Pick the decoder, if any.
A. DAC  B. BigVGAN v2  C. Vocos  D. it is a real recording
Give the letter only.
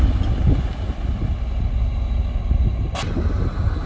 D